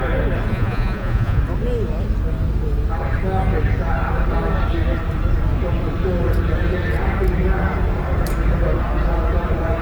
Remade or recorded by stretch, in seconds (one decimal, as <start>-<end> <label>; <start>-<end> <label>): 0.0-0.5 recorded; 0.5-1.4 remade; 1.4-9.8 recorded